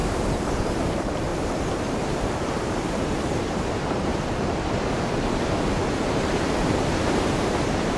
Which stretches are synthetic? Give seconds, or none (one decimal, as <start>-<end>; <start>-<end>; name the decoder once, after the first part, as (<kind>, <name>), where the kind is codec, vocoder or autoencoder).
0.0-1.3 (vocoder, BigVGAN v2); 1.9-4.1; 6.1-8.0